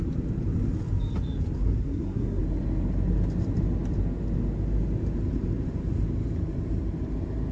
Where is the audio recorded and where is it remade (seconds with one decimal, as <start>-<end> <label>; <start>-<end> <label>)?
0.0-1.8 recorded; 1.8-2.4 remade; 2.4-7.5 recorded